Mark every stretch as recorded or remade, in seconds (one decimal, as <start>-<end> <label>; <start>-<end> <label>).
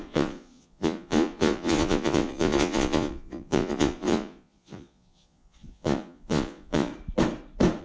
0.0-6.9 remade; 6.9-7.8 recorded